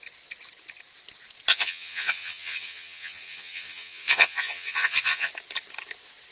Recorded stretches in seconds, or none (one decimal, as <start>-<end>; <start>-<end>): 0.0-1.5; 5.3-6.3